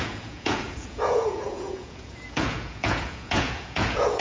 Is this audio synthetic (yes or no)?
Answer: yes